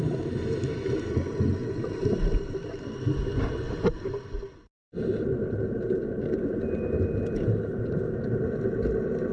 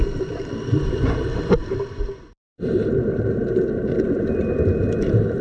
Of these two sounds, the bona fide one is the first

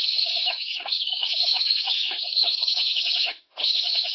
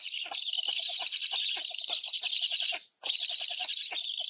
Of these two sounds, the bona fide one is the second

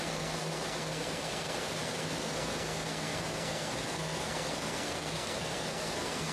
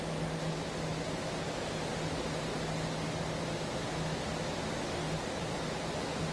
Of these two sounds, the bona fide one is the second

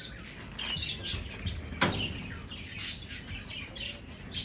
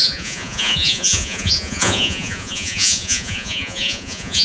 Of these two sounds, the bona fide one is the first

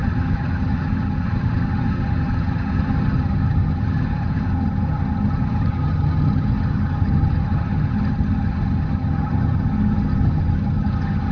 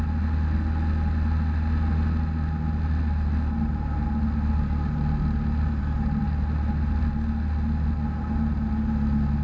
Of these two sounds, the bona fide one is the second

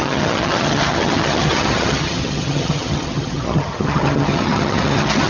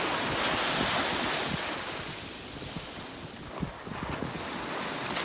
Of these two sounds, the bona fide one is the second